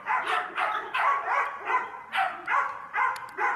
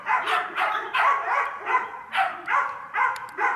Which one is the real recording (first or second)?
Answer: first